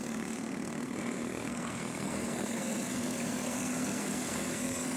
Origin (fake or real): fake